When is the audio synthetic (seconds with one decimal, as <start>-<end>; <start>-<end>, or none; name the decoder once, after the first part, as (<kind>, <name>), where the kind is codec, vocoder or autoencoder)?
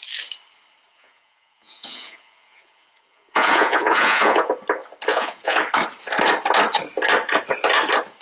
0.9-4.5 (vocoder, Vocos); 5.1-5.6